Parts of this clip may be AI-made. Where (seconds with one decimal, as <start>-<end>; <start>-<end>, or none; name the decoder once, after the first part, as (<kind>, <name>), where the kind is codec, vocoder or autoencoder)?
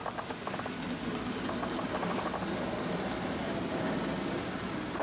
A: none